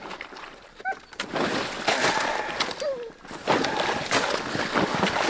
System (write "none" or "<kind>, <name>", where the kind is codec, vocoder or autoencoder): none